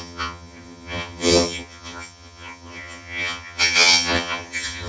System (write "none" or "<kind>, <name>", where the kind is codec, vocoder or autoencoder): vocoder, HiFi-GAN